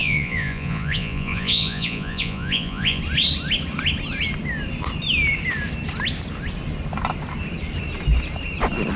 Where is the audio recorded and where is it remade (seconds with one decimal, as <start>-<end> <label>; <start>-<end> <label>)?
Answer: 0.0-3.0 remade; 3.0-9.0 recorded